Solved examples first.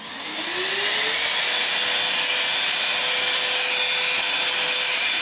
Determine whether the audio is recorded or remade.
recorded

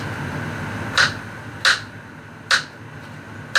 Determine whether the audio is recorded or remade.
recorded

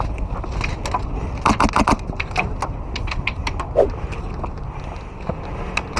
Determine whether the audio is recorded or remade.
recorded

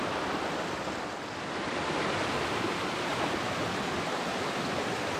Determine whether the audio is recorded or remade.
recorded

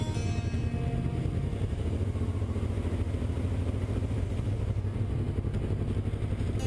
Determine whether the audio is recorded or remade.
recorded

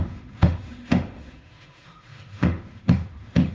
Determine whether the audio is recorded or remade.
remade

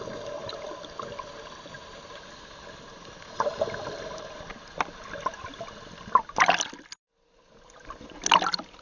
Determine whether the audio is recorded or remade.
recorded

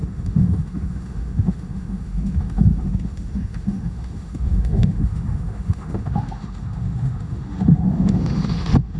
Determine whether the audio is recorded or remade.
remade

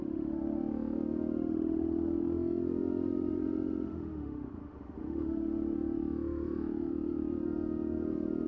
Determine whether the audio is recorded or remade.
remade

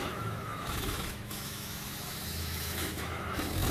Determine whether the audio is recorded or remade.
remade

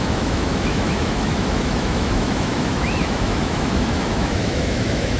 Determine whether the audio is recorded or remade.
remade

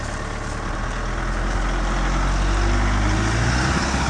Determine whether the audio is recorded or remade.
recorded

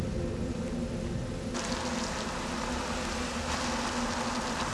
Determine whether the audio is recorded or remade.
recorded